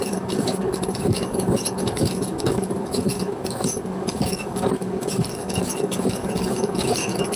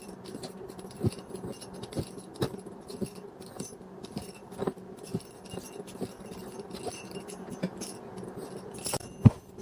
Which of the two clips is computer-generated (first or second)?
first